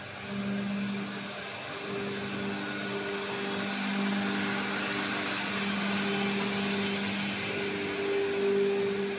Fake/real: real